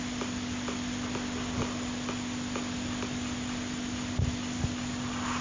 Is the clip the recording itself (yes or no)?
yes